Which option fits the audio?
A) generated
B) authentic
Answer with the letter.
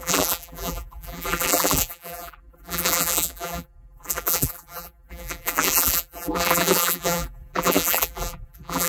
A